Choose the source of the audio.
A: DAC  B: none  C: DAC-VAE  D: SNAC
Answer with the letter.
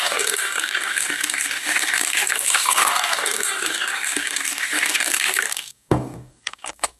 A